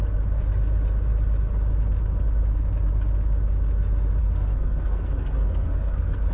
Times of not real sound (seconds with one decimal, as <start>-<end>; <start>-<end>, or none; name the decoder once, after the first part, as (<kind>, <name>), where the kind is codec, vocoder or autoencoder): 4.2-6.3 (codec, SNAC)